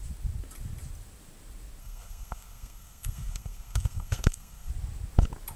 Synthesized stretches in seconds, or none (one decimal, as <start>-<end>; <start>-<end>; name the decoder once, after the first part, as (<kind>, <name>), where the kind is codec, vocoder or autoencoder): 1.8-4.7 (codec, SNAC)